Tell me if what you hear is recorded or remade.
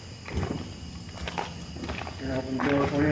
recorded